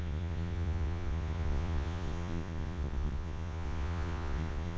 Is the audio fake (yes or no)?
yes